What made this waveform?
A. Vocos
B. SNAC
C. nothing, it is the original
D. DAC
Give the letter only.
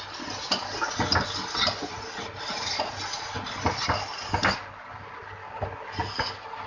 C